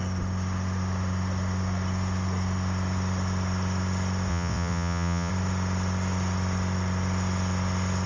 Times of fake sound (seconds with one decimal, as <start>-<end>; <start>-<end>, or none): 4.3-5.3